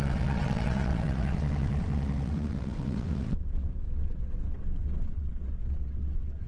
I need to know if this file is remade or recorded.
remade